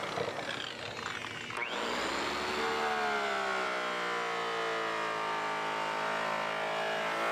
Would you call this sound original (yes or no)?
yes